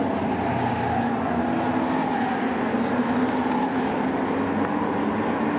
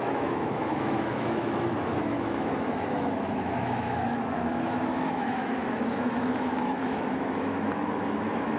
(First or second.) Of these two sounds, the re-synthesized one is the second